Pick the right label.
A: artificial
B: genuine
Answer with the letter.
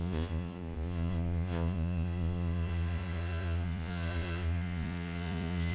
A